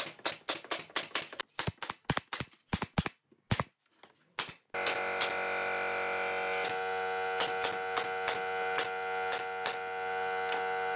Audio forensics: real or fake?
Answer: real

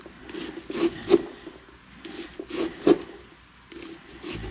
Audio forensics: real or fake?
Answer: real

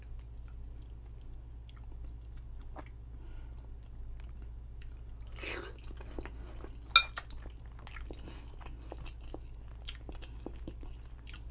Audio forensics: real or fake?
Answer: real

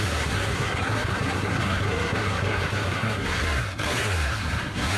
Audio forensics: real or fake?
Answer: fake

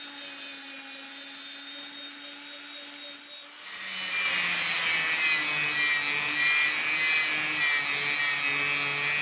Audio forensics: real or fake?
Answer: real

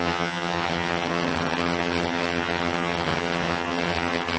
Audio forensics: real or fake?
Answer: fake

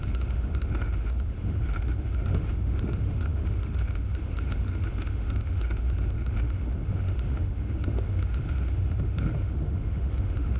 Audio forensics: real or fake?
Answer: fake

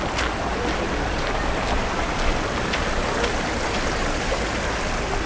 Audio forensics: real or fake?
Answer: real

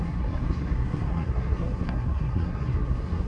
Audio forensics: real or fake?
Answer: fake